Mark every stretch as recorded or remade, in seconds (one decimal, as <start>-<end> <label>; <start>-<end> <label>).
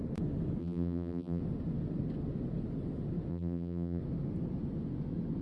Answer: 0.0-0.6 recorded; 0.6-1.4 remade; 1.4-3.3 recorded; 3.3-4.0 remade; 4.0-5.4 recorded